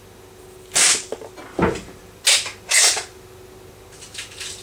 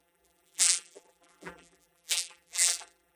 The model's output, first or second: second